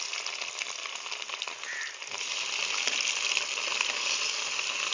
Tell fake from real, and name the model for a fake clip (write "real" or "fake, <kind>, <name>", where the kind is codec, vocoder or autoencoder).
real